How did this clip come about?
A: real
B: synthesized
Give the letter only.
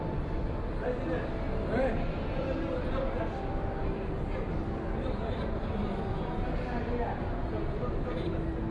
A